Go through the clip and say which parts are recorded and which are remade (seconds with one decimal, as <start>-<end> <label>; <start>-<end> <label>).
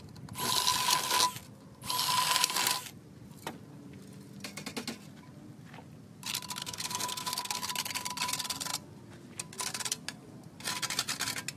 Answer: 0.0-6.6 recorded; 6.6-7.6 remade; 7.6-11.6 recorded